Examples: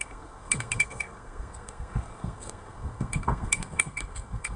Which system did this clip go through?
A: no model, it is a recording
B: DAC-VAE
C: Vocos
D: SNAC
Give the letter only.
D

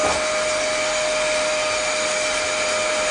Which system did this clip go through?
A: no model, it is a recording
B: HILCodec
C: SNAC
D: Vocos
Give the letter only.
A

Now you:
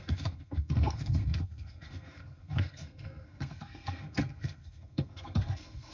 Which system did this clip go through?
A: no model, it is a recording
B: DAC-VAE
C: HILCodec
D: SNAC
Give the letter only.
D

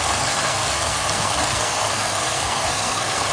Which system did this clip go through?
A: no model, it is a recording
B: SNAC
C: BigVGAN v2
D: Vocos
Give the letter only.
B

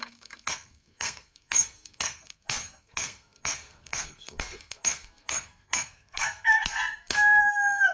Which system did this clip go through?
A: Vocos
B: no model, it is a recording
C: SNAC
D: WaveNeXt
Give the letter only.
C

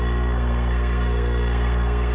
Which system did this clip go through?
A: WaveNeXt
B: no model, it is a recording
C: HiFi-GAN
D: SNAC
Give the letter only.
D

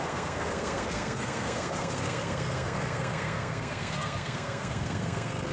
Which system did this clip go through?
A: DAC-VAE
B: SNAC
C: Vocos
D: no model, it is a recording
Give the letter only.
B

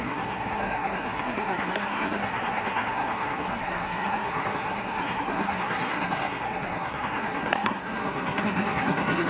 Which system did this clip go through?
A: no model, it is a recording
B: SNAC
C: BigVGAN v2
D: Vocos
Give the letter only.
B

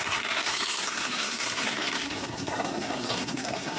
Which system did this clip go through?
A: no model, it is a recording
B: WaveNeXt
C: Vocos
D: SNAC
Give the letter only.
D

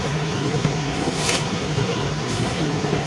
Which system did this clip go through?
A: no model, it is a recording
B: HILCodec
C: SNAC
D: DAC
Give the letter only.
C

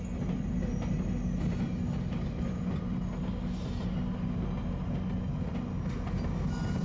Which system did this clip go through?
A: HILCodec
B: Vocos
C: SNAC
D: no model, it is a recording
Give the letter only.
D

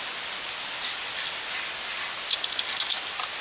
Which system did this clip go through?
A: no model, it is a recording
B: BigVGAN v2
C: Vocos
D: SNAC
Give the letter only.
A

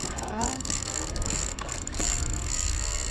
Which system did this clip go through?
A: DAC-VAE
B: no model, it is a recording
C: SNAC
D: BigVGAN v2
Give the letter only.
C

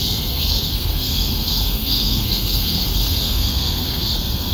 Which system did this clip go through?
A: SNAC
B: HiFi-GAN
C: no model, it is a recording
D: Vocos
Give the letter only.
A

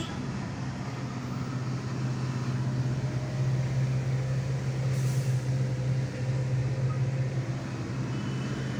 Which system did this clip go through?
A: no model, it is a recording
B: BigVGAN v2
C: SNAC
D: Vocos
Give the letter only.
A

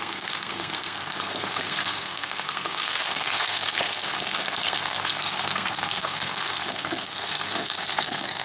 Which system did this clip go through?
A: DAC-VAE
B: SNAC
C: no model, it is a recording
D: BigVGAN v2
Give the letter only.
B